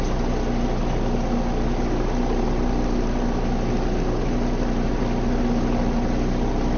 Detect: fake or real real